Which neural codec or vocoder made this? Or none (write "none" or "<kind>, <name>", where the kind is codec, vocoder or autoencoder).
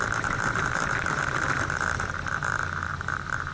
vocoder, BigVGAN v2